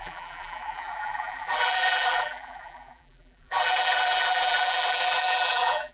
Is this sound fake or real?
fake